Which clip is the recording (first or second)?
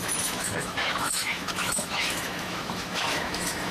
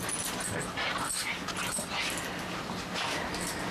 second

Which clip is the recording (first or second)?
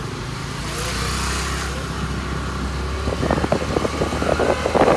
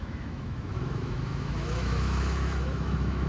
first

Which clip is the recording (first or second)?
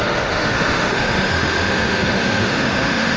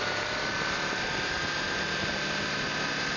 second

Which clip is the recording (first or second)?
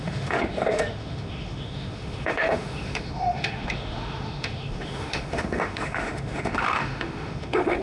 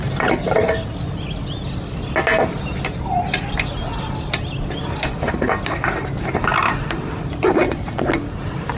second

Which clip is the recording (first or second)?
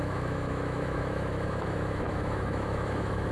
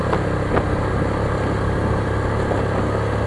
second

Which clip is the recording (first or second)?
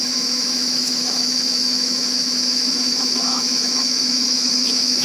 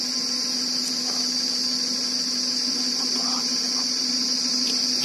second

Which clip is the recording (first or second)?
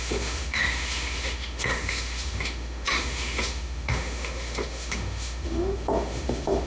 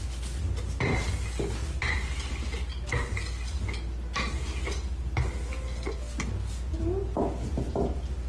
second